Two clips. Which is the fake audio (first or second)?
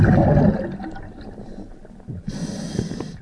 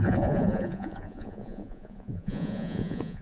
second